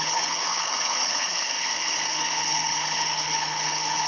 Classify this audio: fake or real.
fake